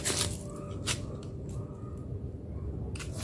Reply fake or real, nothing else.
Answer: real